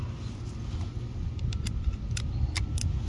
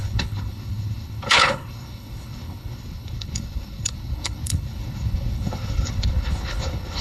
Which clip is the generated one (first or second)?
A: second